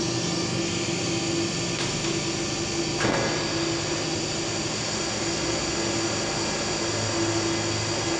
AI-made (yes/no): no